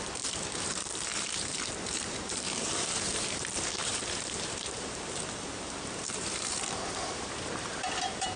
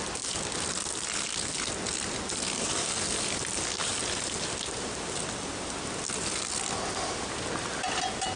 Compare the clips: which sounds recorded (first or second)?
second